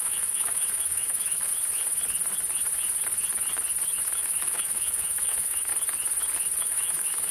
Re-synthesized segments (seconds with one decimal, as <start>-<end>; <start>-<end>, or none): 0.0-1.5; 4.0-5.7; 6.6-7.3